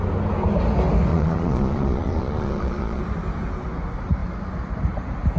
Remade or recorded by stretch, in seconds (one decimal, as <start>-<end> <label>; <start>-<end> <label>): 0.0-1.1 recorded; 1.1-3.0 remade; 3.0-5.4 recorded